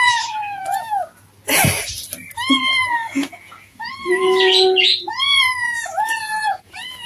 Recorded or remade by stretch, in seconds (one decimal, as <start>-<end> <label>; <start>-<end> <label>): 0.0-0.6 remade; 0.6-2.5 recorded; 2.5-7.1 remade